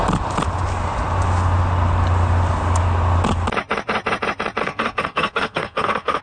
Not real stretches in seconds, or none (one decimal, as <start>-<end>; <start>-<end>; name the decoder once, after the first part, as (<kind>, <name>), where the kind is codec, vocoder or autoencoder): 4.6-6.2 (codec, SNAC)